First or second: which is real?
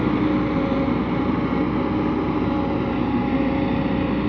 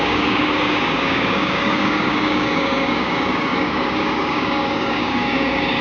first